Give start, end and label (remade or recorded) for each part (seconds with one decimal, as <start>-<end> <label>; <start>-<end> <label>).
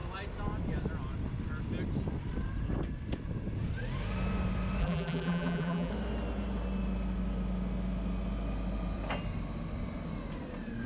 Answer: 0.0-4.8 recorded; 4.8-5.9 remade; 5.9-10.9 recorded